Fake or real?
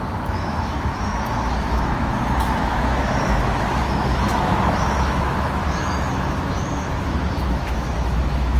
fake